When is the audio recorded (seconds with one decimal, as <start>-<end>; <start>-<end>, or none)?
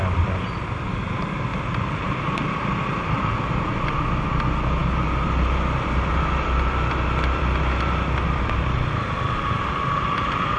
0.0-1.5; 3.8-10.6